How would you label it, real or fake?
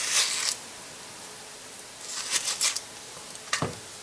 real